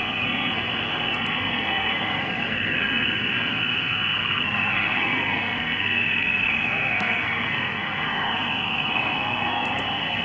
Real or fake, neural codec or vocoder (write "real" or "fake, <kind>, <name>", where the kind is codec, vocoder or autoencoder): fake, codec, SNAC